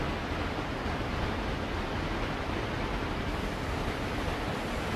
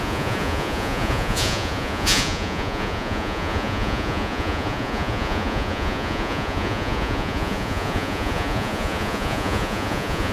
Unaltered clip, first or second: first